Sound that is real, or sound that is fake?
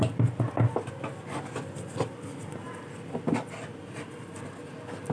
real